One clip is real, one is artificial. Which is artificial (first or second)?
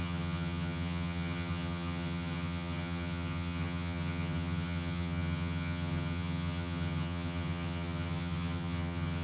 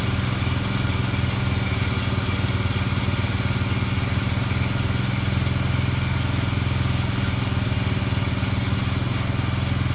first